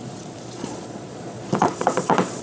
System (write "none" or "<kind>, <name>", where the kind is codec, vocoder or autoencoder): vocoder, Vocos